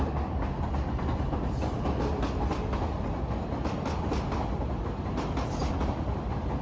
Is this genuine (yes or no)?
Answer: yes